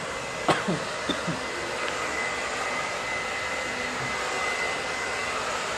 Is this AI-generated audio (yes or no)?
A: no